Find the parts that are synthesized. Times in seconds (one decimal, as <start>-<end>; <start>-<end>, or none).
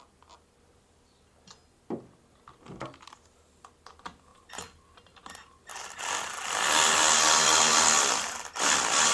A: none